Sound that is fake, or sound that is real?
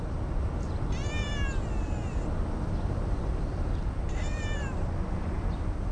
real